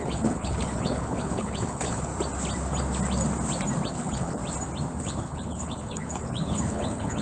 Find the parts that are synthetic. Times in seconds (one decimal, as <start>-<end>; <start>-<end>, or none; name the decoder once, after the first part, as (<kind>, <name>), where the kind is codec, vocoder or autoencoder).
0.0-2.1 (codec, HILCodec); 3.9-4.4; 5.0-7.2